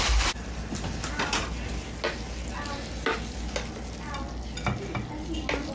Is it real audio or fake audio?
real